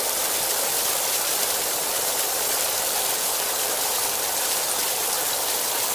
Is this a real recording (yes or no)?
no